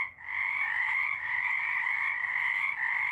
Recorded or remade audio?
recorded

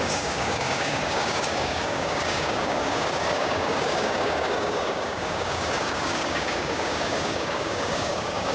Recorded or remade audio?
remade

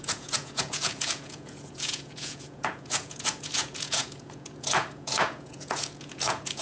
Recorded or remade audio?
remade